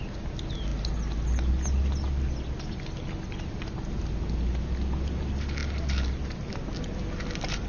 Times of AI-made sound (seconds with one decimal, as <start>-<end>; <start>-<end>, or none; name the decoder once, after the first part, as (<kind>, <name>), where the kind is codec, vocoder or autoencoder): none

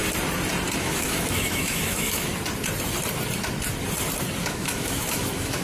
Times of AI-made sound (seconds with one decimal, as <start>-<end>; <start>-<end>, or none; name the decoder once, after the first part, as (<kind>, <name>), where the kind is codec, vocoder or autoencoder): 0.8-2.3 (autoencoder, DAC-VAE); 4.4-5.6

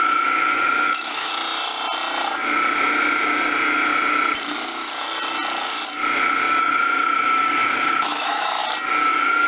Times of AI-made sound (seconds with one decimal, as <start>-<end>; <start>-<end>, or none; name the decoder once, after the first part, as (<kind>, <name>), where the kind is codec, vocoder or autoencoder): 0.0-1.3 (autoencoder, DAC-VAE); 6.6-8.6; 9.1-9.5

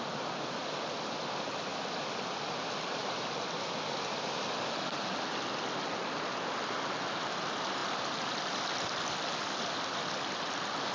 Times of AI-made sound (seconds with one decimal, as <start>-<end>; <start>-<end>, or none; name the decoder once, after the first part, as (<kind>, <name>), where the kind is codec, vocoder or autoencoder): none

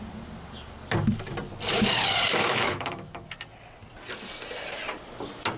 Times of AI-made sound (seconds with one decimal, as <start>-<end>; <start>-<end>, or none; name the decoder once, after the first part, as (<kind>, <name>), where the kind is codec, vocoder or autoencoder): 2.4-3.1 (autoencoder, DAC-VAE)

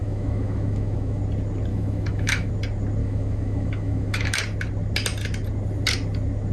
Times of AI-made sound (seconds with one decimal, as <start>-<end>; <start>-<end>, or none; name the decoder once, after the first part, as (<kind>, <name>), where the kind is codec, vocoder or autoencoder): 0.0-1.2 (autoencoder, DAC-VAE); 1.7-2.5; 3.0-4.4

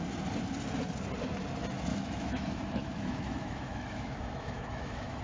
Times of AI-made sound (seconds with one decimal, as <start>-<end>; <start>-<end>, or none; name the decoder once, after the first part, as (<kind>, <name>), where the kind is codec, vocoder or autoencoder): 1.9-5.2 (autoencoder, DAC-VAE)